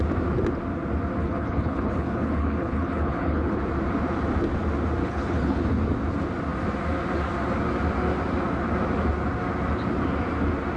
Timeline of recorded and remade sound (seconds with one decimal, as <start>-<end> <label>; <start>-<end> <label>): 0.0-1.2 recorded; 1.2-3.6 remade; 3.6-5.0 recorded; 5.0-5.6 remade; 5.6-10.8 recorded